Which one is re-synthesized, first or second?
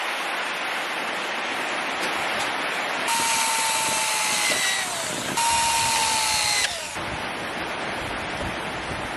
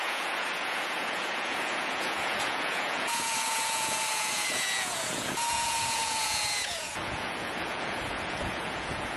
second